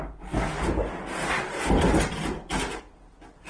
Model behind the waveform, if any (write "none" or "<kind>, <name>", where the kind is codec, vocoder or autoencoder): none